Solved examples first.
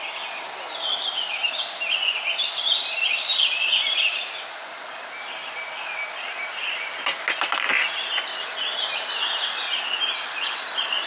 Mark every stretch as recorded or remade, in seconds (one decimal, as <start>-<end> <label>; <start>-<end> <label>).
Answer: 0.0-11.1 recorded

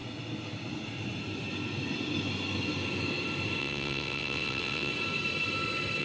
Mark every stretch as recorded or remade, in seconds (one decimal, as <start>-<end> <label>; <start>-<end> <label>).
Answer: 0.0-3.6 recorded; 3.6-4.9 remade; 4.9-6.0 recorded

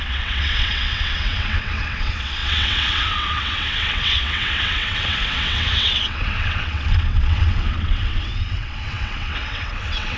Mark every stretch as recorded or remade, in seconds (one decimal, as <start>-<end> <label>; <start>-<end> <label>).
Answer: 0.0-10.2 remade